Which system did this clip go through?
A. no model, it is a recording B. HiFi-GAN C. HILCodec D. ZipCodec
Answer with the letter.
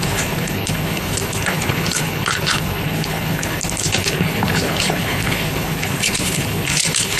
C